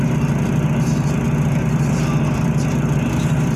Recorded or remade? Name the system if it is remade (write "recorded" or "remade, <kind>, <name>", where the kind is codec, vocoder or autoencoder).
recorded